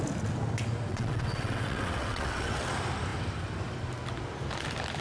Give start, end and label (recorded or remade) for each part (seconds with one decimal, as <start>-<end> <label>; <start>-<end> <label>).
0.0-0.9 recorded; 0.9-2.7 remade; 2.7-5.0 recorded